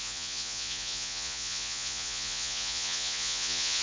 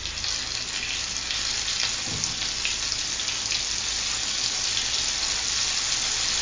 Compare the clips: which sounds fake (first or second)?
first